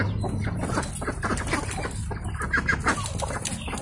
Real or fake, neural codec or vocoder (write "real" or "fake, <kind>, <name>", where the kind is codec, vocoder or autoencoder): real